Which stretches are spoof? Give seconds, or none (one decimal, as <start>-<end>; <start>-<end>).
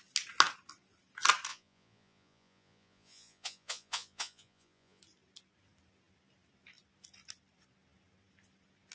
1.5-5.0